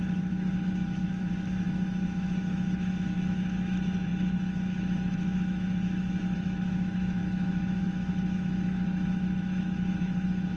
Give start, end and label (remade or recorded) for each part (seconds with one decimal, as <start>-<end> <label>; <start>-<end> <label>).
0.0-10.6 remade